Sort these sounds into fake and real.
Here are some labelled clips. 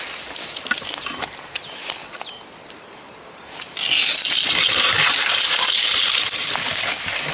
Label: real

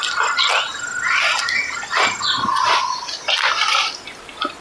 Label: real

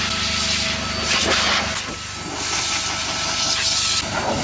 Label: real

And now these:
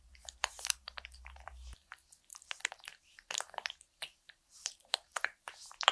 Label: fake